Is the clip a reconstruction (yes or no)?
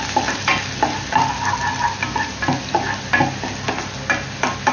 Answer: no